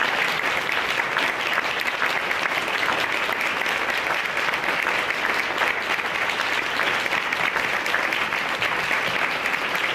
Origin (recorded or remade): recorded